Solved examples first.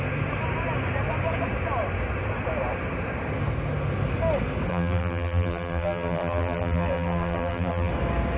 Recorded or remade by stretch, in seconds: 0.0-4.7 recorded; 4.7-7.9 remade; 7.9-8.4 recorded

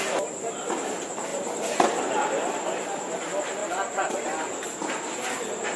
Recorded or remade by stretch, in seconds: 0.0-1.3 recorded; 1.3-2.0 remade; 2.0-3.6 recorded; 3.6-5.8 remade

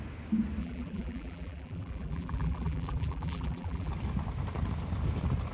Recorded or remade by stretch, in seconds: 0.0-0.6 recorded; 0.6-3.9 remade; 3.9-5.5 recorded

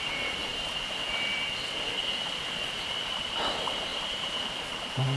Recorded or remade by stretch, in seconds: 0.0-3.9 recorded; 3.9-4.4 remade; 4.4-5.2 recorded